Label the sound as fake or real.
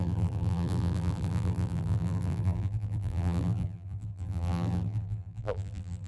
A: fake